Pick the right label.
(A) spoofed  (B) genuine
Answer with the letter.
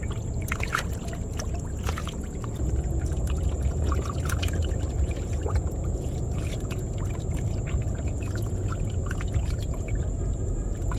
A